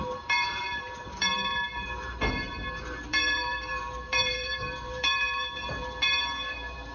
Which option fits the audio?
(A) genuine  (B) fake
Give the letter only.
B